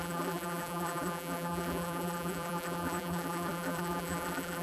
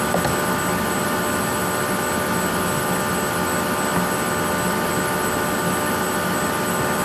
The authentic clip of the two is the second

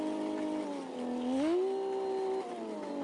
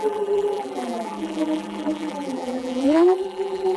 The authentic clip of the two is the first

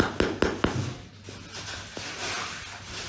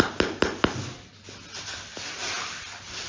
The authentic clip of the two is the first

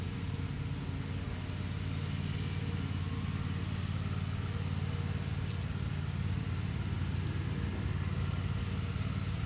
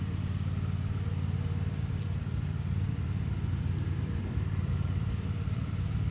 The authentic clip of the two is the first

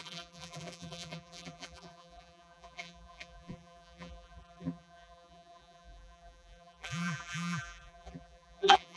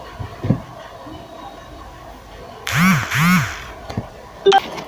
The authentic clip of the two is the second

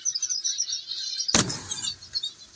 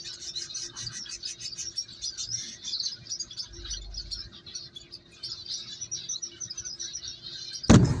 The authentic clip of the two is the second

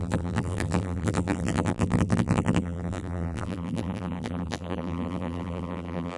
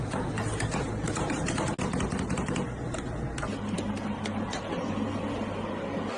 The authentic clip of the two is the second